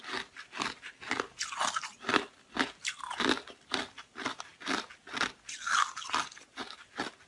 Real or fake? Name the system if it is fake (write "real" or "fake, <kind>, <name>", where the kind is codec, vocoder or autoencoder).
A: real